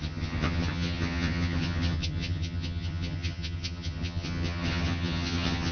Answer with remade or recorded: remade